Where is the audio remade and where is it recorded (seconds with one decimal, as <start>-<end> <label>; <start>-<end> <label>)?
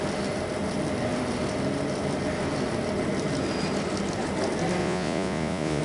0.0-4.8 recorded; 4.8-5.8 remade